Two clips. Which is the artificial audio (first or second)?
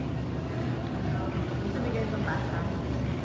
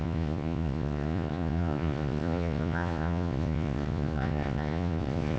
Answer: second